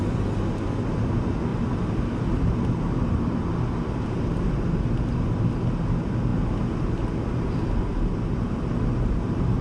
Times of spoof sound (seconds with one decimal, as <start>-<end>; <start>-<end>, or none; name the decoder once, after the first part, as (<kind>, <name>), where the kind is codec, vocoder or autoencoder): none